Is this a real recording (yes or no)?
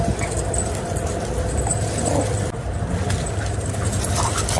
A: yes